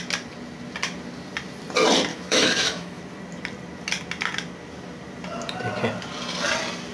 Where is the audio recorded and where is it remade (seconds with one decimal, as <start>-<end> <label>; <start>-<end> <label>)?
0.0-2.1 recorded; 2.1-3.0 remade; 3.0-6.9 recorded